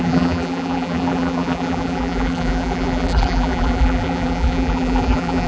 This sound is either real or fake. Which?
fake